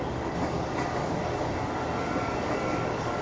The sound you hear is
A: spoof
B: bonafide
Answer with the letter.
A